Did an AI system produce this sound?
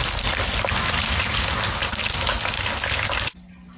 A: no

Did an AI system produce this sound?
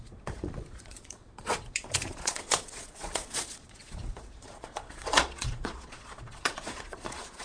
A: yes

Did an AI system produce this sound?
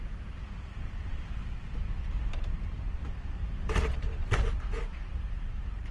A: yes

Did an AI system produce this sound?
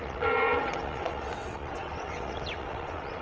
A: yes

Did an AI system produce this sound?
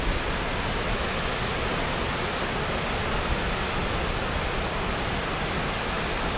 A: no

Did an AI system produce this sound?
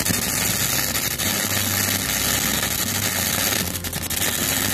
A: no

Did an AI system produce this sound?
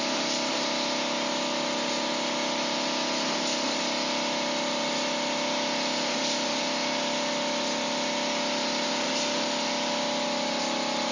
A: no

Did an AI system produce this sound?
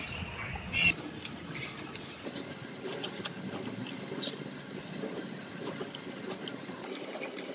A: no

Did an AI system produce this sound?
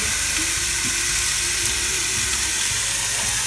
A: no